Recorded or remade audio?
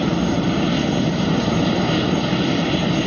recorded